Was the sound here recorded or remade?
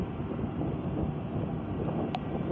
recorded